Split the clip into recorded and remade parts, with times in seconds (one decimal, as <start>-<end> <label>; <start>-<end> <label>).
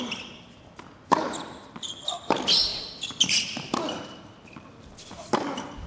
0.0-5.9 recorded